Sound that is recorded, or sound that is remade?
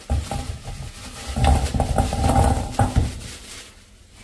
recorded